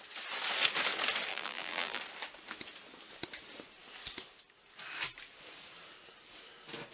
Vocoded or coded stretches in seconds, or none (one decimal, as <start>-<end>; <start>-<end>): 1.3-2.0